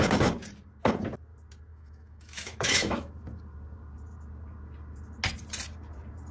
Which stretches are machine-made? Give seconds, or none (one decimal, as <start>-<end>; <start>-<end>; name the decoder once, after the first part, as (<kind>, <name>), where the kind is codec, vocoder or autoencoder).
1.7-3.1 (autoencoder, DAC-VAE)